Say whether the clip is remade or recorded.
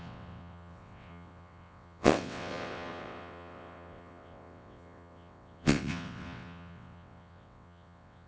remade